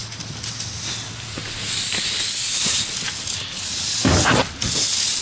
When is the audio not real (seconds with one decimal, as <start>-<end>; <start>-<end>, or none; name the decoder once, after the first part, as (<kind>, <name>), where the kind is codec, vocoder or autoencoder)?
none